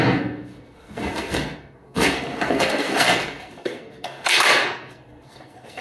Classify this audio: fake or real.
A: fake